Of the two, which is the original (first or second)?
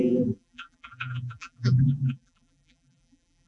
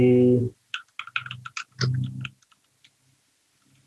second